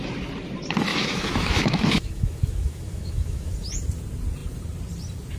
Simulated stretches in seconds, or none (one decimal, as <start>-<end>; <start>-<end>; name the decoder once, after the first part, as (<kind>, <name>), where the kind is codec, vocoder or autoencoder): 0.9-3.5 (autoencoder, DAC-VAE)